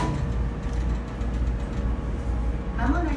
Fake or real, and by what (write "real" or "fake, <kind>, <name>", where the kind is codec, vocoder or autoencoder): real